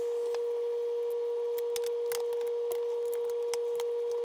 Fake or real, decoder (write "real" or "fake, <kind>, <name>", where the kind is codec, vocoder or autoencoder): real